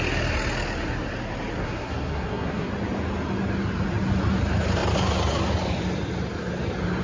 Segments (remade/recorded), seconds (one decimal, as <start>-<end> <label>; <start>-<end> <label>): 0.0-1.6 recorded; 1.6-2.7 remade; 2.7-7.0 recorded